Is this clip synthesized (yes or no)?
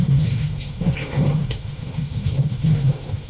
yes